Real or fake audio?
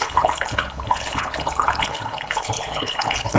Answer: fake